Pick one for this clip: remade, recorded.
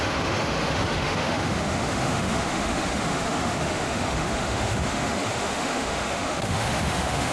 remade